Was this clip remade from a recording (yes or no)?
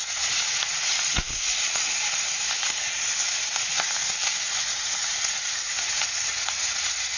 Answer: yes